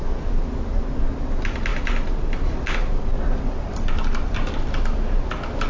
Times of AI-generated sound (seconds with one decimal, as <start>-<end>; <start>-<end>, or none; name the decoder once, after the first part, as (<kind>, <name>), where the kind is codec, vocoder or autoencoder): none